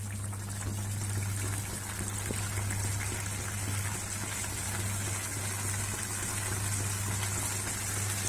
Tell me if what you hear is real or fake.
real